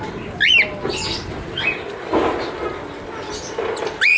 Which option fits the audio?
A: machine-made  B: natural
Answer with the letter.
B